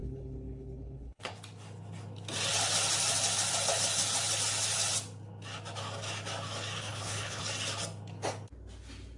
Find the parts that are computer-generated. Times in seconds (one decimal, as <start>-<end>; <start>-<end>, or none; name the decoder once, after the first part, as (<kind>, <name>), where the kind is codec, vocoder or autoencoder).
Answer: 0.0-1.3 (codec, HILCodec); 6.8-7.4